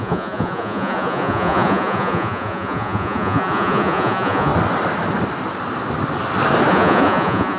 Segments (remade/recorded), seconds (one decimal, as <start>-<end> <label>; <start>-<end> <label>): 0.0-4.5 remade; 4.5-6.7 recorded; 6.7-7.6 remade